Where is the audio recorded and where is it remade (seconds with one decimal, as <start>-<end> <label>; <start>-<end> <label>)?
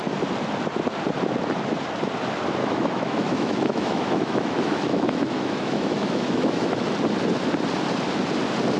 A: 0.0-2.6 recorded; 2.6-6.9 remade; 6.9-8.8 recorded